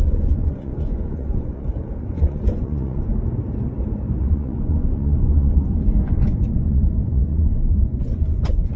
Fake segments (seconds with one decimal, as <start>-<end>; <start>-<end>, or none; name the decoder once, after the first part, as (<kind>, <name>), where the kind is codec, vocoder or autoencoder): 0.0-3.1 (vocoder, Vocos); 4.2-8.8